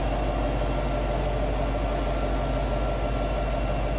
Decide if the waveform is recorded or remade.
recorded